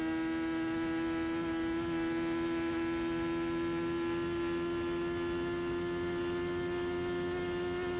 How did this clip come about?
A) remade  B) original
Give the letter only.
B